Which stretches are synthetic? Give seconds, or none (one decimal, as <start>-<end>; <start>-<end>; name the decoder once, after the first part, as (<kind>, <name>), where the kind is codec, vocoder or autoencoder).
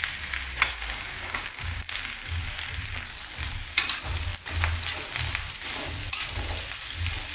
0.7-2.6 (codec, DAC)